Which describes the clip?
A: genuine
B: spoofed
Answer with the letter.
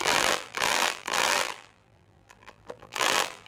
B